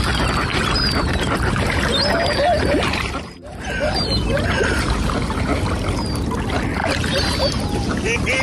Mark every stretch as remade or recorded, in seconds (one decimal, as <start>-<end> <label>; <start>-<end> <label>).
0.0-0.5 recorded; 0.5-5.1 remade; 5.1-8.4 recorded